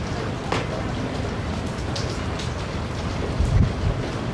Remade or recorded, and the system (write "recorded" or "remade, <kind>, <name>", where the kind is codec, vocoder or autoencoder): recorded